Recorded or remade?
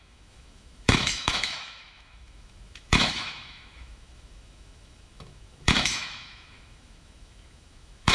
remade